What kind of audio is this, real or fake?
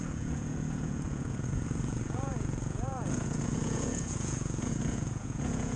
fake